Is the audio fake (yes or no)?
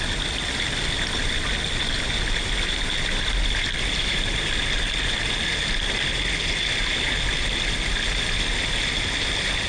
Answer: no